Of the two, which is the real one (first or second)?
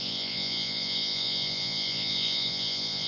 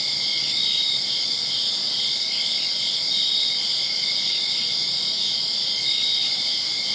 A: second